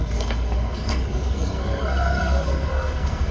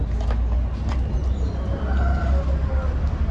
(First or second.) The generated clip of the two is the first